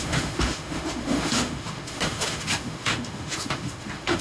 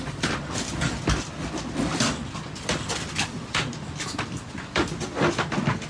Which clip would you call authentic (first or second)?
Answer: second